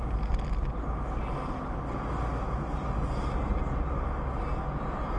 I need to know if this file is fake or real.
real